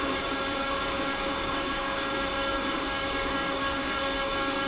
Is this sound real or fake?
fake